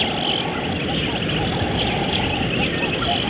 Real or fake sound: real